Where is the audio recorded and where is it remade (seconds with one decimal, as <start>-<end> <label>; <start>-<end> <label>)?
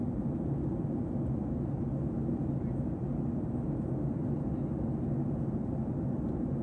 0.0-6.6 recorded